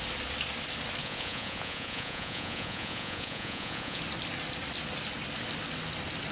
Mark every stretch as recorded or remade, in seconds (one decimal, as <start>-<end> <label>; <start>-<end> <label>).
0.0-1.0 recorded; 1.0-4.0 remade; 4.0-6.3 recorded